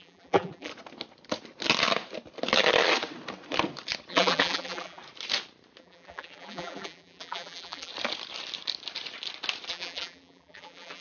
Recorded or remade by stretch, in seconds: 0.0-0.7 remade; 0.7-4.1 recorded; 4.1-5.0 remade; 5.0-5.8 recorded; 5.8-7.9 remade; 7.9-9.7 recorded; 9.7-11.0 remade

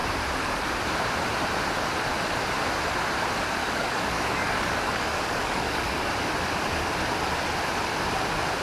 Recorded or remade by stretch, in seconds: 0.0-3.6 recorded; 3.6-6.1 remade; 6.1-8.6 recorded

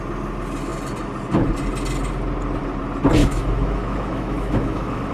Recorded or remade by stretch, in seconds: 0.0-3.2 recorded; 3.2-5.1 remade

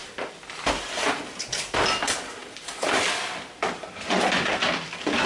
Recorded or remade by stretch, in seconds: 0.0-2.0 remade; 2.0-2.4 recorded; 2.4-5.3 remade

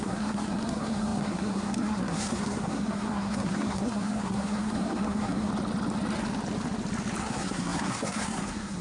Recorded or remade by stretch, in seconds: 0.0-5.5 remade; 5.5-7.2 recorded; 7.2-8.8 remade